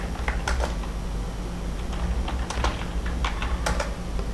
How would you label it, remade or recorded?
recorded